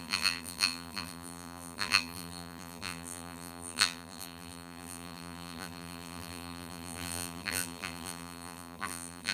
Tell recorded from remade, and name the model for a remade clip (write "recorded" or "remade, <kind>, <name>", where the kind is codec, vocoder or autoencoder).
remade, vocoder, BigVGAN v2